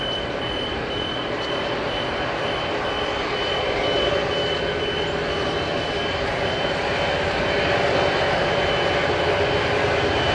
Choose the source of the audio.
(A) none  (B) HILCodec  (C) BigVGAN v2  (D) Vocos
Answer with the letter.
A